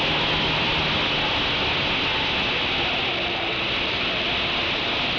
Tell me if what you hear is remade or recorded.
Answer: recorded